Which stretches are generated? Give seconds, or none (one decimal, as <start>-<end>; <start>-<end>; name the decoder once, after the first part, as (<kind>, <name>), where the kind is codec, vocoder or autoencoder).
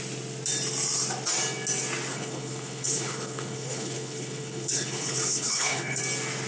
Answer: 2.1-6.0 (codec, HILCodec)